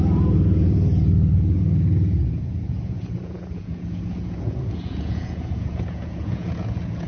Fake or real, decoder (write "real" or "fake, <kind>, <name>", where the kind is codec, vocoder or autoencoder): fake, vocoder, Vocos